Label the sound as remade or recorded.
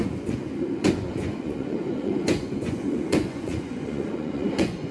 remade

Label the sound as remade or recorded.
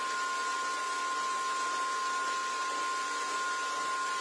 recorded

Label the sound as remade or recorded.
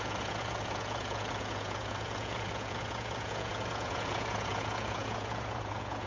remade